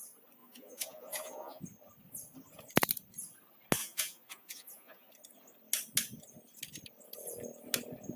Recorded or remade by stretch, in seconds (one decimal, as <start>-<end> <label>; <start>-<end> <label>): 0.0-0.4 recorded; 0.4-1.6 remade; 1.6-3.8 recorded; 3.8-5.1 remade; 5.1-8.2 recorded